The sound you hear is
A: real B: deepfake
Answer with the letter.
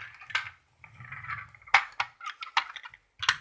A